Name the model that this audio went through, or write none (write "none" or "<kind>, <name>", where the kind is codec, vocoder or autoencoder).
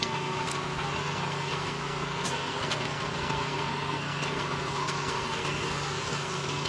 codec, SNAC